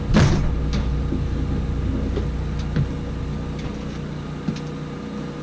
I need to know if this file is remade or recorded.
recorded